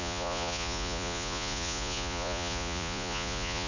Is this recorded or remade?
remade